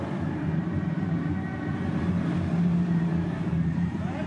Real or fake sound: fake